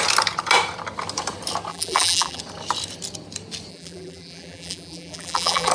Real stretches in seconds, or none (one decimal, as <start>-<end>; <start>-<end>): 0.0-1.7; 2.4-3.7